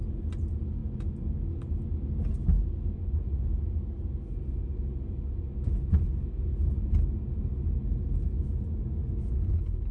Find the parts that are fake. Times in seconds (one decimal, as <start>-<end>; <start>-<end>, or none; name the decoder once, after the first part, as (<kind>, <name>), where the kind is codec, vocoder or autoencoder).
none